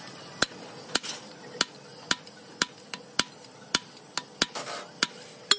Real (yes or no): yes